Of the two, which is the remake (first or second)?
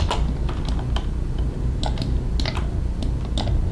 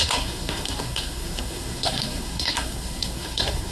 second